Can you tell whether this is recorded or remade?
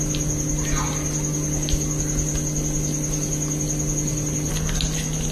recorded